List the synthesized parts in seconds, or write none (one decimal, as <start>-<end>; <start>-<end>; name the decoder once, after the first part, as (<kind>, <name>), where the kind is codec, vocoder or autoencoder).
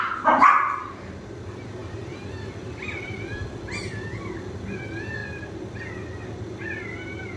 1.8-4.2 (vocoder, BigVGAN v2); 5.2-5.8